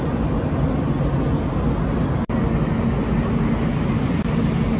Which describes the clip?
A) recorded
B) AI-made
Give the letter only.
A